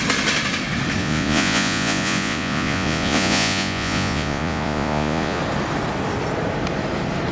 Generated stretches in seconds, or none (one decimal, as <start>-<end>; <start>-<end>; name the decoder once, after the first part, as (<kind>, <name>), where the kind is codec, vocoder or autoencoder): 1.0-5.4 (vocoder, Vocos)